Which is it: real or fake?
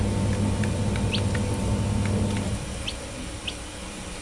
real